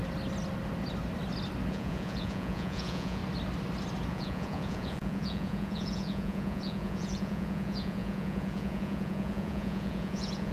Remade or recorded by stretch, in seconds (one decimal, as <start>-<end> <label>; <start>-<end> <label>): 0.0-1.7 recorded; 1.7-3.2 remade; 3.2-4.1 recorded; 4.1-10.5 remade